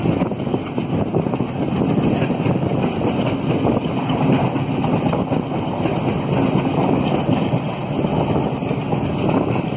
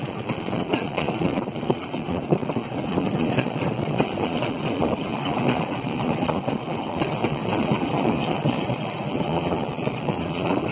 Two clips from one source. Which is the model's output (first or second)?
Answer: second